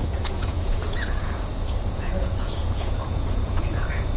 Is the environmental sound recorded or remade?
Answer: remade